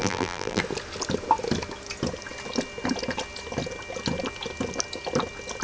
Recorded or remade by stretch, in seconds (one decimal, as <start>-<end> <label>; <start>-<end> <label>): 0.0-0.6 remade; 0.6-5.6 recorded

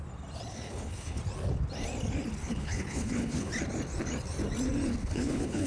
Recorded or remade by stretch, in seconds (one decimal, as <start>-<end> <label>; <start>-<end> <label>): 0.0-0.5 recorded; 0.5-1.2 remade; 1.2-2.4 recorded; 2.4-3.5 remade; 3.5-5.0 recorded; 5.0-5.7 remade